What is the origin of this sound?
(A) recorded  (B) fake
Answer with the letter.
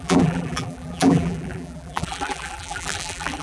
B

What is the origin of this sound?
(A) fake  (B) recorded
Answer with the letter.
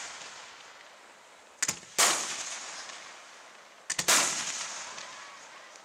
B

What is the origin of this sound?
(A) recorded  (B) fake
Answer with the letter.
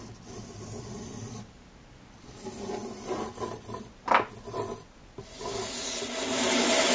A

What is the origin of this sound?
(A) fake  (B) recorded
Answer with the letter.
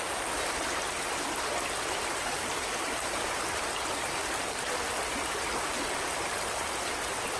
B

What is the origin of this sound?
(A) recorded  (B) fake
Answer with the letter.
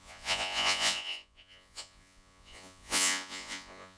B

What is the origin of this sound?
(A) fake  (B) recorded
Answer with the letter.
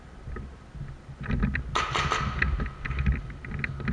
B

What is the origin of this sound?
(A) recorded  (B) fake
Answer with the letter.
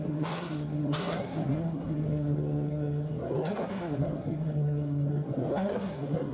B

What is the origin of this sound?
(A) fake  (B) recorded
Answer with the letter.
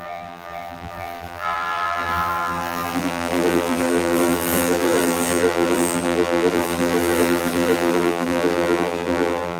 A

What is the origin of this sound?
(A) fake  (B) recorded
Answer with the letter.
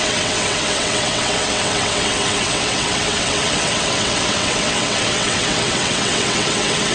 A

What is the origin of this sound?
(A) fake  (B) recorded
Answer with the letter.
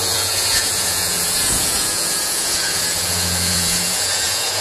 A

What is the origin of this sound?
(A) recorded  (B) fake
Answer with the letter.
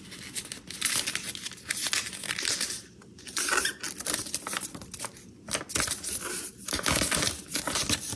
A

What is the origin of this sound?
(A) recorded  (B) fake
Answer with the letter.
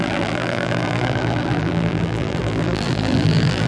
B